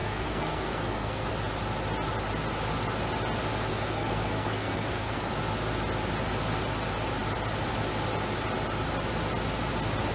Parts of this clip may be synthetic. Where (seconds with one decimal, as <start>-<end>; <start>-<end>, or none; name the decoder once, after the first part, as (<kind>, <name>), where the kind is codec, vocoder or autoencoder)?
0.0-1.3 (codec, SNAC); 3.7-5.3